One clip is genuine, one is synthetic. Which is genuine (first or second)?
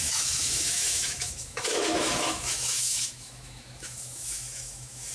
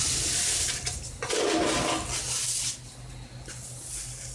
second